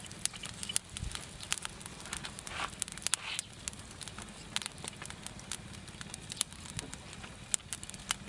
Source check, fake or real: real